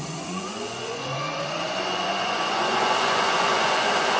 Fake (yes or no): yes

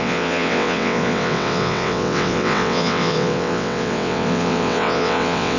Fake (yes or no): yes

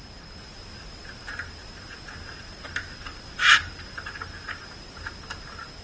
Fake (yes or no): no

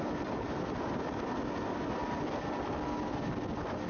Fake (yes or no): no